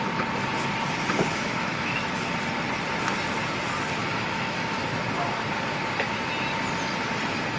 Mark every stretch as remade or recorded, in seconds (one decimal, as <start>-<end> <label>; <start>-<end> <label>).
0.0-1.3 recorded; 1.3-2.1 remade; 2.1-4.0 recorded; 4.0-4.8 remade; 4.8-7.6 recorded